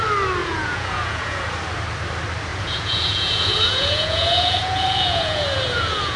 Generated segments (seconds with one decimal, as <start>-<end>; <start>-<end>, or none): 0.4-1.4; 2.5-6.2